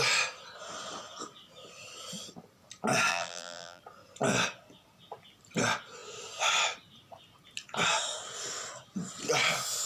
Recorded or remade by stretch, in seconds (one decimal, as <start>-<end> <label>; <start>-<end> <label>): 0.0-3.1 recorded; 3.1-3.8 remade; 3.8-9.9 recorded

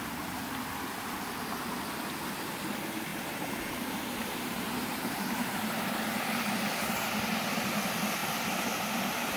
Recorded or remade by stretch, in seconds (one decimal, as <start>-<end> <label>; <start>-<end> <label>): 0.0-3.1 recorded; 3.1-6.2 remade; 6.2-9.4 recorded

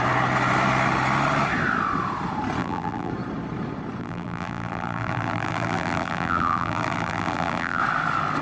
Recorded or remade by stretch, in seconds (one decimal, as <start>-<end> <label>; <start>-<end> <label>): 0.0-2.6 recorded; 2.6-3.1 remade; 3.1-4.0 recorded; 4.0-7.8 remade; 7.8-8.4 recorded

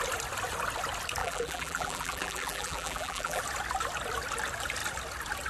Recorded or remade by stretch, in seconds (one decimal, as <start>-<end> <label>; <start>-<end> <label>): 0.0-1.2 recorded; 1.2-3.4 remade; 3.4-5.5 recorded

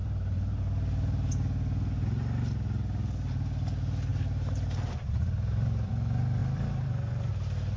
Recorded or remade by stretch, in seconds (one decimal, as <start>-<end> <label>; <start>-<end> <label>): 0.0-0.6 remade; 0.6-4.1 recorded; 4.1-5.9 remade; 5.9-6.4 recorded; 6.4-7.3 remade; 7.3-7.8 recorded